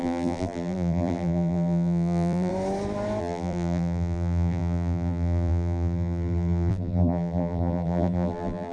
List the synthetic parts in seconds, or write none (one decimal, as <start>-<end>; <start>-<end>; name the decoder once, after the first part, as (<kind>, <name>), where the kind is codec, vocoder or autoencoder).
0.0-2.5 (vocoder, BigVGAN v2); 3.2-8.7